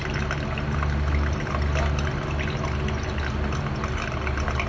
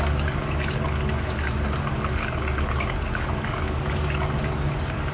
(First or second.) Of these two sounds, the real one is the first